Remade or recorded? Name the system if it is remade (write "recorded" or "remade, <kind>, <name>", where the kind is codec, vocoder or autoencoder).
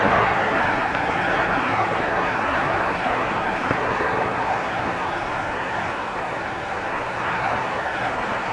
remade, codec, SNAC